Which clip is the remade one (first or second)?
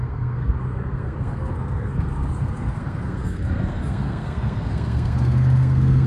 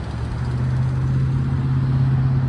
first